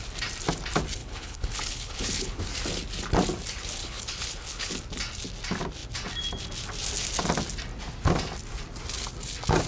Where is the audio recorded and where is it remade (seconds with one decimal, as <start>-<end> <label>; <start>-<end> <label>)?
0.0-1.0 recorded; 1.0-2.4 remade; 2.4-3.8 recorded; 3.8-4.7 remade; 4.7-9.7 recorded

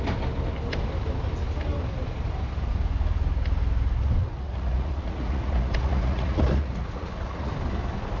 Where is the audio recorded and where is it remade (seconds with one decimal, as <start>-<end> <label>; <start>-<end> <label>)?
0.0-4.2 recorded; 4.2-7.5 remade; 7.5-8.2 recorded

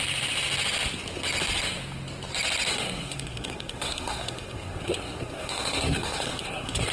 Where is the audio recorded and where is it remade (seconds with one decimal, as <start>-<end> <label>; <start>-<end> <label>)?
0.0-2.7 recorded; 2.7-6.9 remade

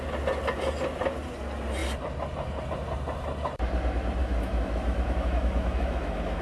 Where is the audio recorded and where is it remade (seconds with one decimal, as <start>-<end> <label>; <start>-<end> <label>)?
0.0-4.2 recorded; 4.2-6.4 remade

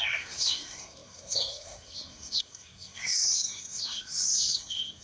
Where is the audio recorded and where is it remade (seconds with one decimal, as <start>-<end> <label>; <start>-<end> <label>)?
0.0-5.0 remade

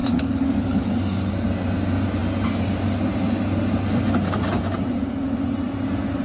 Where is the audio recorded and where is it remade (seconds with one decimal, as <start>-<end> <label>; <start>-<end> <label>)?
0.0-1.3 remade; 1.3-6.2 recorded